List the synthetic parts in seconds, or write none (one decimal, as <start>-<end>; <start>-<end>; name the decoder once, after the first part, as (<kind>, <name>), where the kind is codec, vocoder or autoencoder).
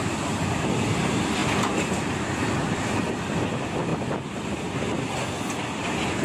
0.0-3.9 (vocoder, BigVGAN v2); 4.6-6.2